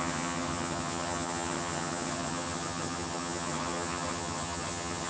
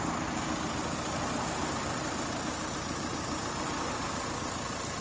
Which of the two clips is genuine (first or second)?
second